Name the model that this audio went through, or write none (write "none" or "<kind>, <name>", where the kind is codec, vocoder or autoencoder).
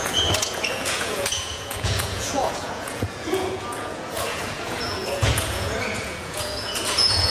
vocoder, Vocos